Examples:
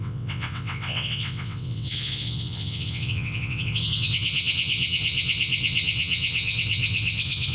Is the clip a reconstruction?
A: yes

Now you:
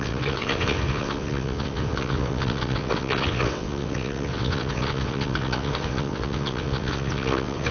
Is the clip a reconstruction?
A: yes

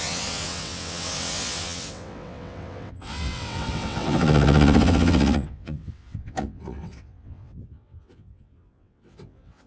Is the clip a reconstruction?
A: yes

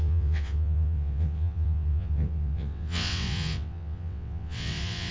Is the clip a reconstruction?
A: yes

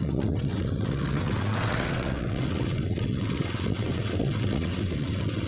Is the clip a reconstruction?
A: yes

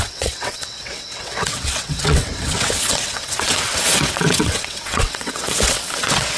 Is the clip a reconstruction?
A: yes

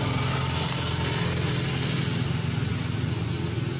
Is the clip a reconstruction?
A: no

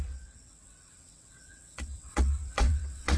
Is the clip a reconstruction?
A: yes